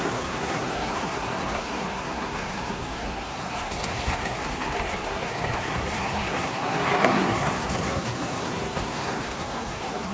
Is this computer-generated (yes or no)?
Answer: yes